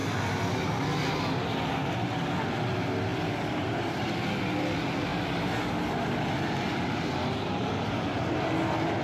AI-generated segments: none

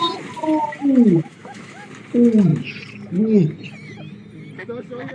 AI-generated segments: 1.1-1.9 (autoencoder, DAC-VAE)

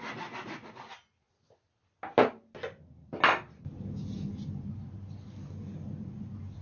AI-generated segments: none